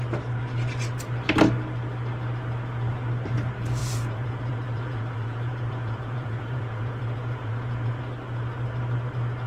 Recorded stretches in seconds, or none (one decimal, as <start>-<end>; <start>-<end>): 0.0-3.8; 8.0-9.5